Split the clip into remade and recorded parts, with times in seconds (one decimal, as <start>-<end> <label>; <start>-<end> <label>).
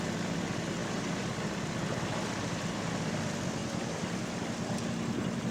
0.0-3.6 recorded; 3.6-4.2 remade; 4.2-5.5 recorded